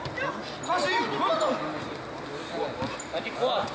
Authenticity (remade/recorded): recorded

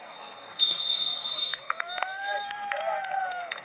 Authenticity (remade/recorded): remade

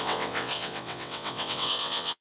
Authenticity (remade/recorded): remade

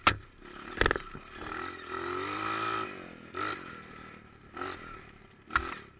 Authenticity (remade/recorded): recorded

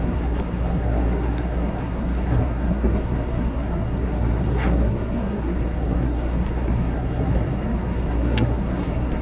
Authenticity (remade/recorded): remade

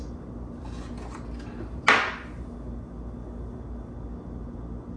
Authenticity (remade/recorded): recorded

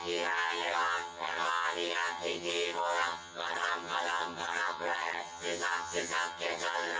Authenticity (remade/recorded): remade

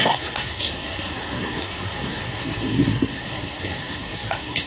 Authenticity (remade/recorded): remade